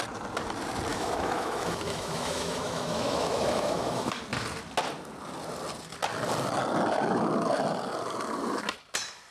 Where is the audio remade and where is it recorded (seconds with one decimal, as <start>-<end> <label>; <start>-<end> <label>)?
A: 0.0-0.9 recorded; 0.9-4.2 remade; 4.2-9.3 recorded